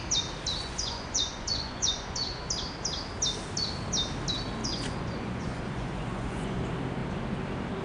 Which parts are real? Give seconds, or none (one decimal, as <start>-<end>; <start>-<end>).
0.0-0.6; 2.5-4.6; 6.6-7.8